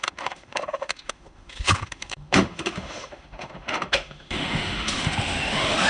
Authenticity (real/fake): fake